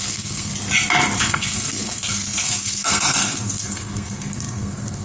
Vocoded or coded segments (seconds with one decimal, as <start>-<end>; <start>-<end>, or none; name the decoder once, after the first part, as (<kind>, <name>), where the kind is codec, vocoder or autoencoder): 0.0-0.5 (codec, SNAC); 1.2-5.0